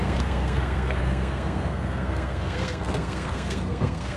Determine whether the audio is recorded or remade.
remade